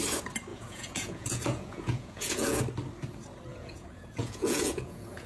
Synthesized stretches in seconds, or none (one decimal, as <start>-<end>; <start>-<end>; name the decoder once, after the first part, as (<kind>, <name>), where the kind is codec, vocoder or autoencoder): 0.5-2.6 (vocoder, Vocos); 3.5-5.3